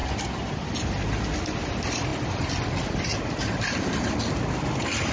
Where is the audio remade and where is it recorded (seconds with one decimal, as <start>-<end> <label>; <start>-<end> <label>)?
0.0-5.1 recorded